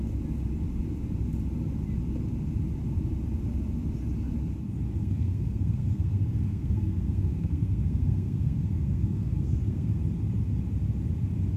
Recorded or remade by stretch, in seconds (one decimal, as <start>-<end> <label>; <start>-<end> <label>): 0.0-5.0 recorded; 5.0-10.0 remade; 10.0-11.6 recorded